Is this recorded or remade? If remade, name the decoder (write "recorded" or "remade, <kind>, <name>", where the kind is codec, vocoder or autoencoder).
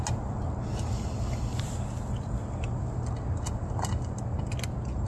recorded